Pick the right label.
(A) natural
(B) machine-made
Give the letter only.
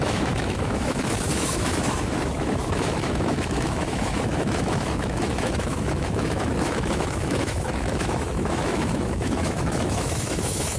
B